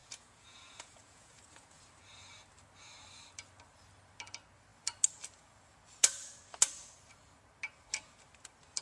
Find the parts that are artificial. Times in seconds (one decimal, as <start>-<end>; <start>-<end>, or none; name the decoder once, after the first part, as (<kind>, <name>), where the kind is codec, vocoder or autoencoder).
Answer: 0.0-1.8 (vocoder, Vocos)